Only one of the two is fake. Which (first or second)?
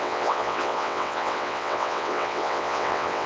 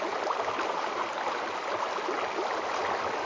first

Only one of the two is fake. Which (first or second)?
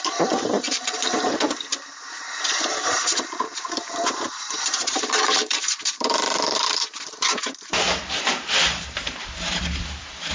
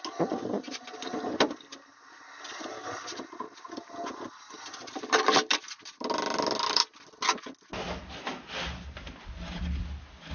first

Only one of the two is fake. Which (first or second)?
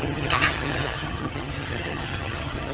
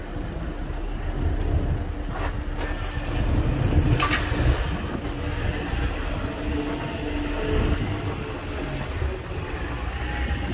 first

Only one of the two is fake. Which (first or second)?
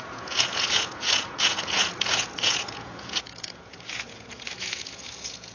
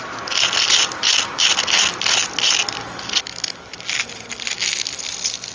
first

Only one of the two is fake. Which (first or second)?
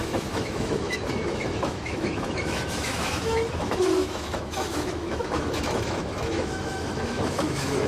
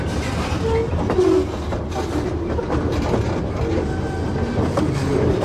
first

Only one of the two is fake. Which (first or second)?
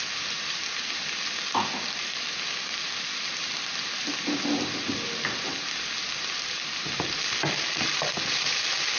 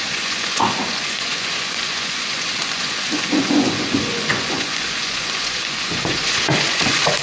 second